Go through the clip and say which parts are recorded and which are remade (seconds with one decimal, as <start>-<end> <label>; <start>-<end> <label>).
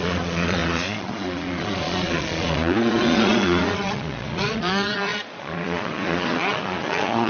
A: 0.0-7.3 remade